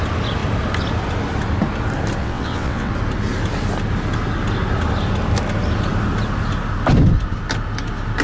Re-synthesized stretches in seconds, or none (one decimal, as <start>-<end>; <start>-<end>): 2.2-2.9